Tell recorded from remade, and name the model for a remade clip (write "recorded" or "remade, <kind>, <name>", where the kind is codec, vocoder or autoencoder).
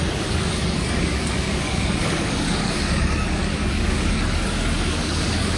remade, codec, DAC